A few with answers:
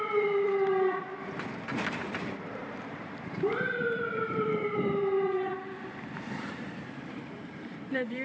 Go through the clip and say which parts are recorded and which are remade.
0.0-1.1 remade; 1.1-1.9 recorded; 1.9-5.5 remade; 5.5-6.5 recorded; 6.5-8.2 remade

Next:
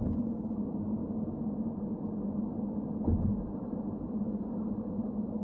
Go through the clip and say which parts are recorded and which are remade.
0.0-1.0 remade; 1.0-3.2 recorded; 3.2-5.4 remade

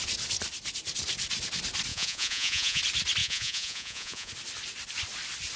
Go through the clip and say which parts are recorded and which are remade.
0.0-1.9 recorded; 1.9-2.8 remade; 2.8-3.2 recorded; 3.2-4.3 remade; 4.3-5.6 recorded

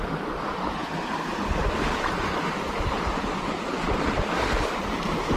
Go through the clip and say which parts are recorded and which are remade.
0.0-0.8 recorded; 0.8-4.0 remade; 4.0-5.4 recorded

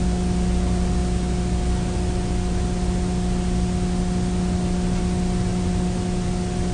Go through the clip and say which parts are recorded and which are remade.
0.0-6.7 recorded

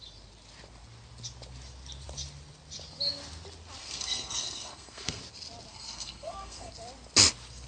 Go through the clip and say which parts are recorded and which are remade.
0.0-3.8 recorded; 3.8-5.2 remade; 5.2-5.7 recorded; 5.7-6.7 remade; 6.7-7.7 recorded

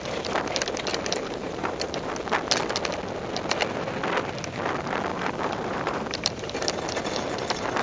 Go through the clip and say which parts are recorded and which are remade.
0.0-0.9 recorded; 0.9-2.1 remade; 2.1-5.1 recorded; 5.1-6.5 remade; 6.5-7.8 recorded